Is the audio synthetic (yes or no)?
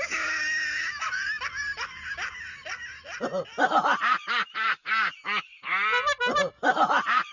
no